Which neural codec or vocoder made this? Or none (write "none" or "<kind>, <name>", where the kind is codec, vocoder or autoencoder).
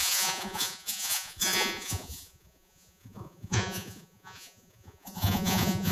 vocoder, Vocos